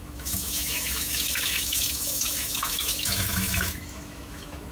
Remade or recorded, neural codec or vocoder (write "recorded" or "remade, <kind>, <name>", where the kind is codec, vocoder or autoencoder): remade, autoencoder, DAC-VAE